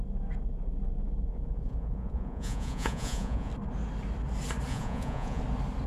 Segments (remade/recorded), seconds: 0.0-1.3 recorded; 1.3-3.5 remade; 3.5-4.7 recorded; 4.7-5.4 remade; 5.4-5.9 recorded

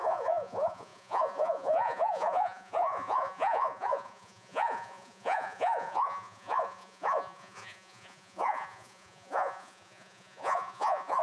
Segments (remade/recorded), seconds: 0.0-11.2 remade

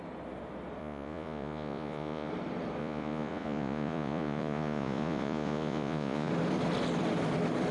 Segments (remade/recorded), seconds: 0.0-0.8 recorded; 0.8-2.3 remade; 2.3-2.8 recorded; 2.8-6.3 remade; 6.3-7.7 recorded

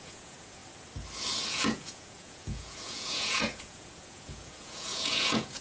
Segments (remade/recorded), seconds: 0.0-0.6 remade; 0.6-1.5 recorded; 1.5-5.6 remade

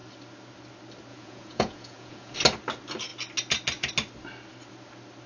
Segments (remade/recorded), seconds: 0.0-1.1 recorded; 1.1-2.4 remade; 2.4-5.3 recorded

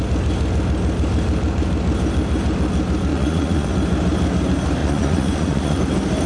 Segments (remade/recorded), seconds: 0.0-3.1 recorded; 3.1-3.7 remade; 3.7-4.8 recorded; 4.8-5.8 remade; 5.8-6.3 recorded

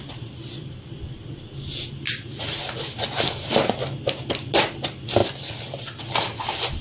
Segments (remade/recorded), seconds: 0.0-6.8 recorded